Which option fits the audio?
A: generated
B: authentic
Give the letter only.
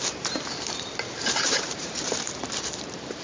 A